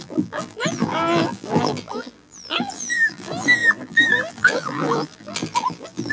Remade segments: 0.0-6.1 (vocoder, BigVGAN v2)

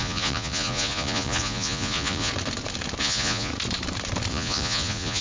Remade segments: 0.0-2.3 (vocoder, Vocos); 3.0-3.5; 4.3-5.2

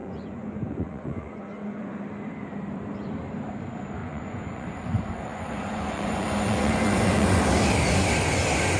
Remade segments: 0.0-1.9 (vocoder, Vocos); 4.0-7.4

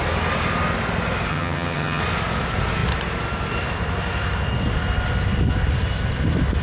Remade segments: 1.3-2.0 (vocoder, HiFi-GAN)

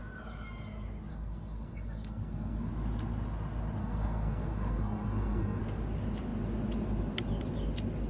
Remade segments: 1.1-2.7 (codec, SNAC); 3.8-5.6

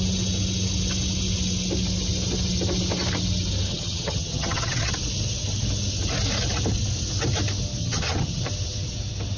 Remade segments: 3.7-4.9 (vocoder, HiFi-GAN); 7.8-8.4